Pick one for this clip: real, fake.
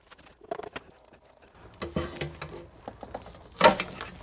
real